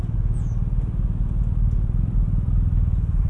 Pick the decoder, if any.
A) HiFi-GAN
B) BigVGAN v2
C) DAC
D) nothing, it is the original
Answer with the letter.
D